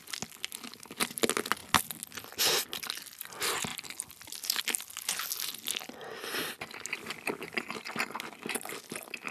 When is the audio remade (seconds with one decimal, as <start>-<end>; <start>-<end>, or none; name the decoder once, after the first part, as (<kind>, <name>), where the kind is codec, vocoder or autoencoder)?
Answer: none